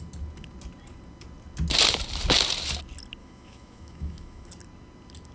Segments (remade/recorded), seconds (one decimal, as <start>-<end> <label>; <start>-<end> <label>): 0.0-3.2 recorded; 3.2-4.5 remade; 4.5-5.3 recorded